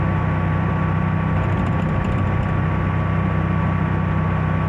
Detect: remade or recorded recorded